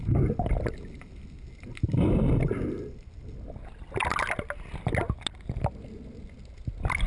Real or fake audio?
real